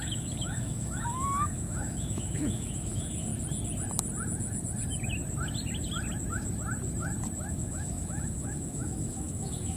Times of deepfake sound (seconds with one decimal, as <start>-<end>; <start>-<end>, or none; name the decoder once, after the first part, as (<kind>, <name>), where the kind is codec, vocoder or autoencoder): 0.0-3.3 (autoencoder, DAC-VAE); 7.5-9.8